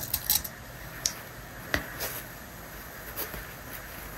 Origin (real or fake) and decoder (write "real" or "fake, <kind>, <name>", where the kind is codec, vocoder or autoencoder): real